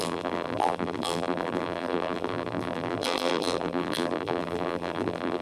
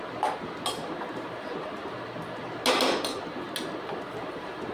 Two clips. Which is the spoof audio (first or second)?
first